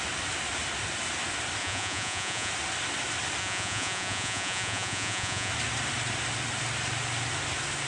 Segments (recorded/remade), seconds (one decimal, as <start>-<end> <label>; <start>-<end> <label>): 0.0-1.6 recorded; 1.6-2.5 remade; 2.5-3.4 recorded; 3.4-5.5 remade; 5.5-7.9 recorded